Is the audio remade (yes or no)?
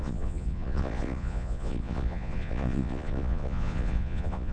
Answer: yes